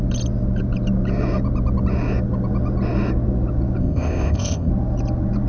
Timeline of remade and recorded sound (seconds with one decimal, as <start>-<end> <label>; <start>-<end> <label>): 0.0-3.8 recorded; 3.8-4.7 remade; 4.7-5.5 recorded